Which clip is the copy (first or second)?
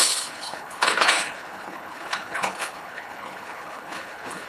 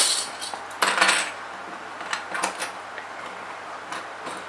first